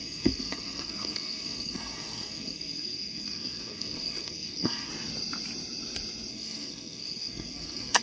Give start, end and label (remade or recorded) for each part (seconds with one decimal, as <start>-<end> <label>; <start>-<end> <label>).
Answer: 0.0-4.9 remade; 4.9-6.3 recorded; 6.3-8.0 remade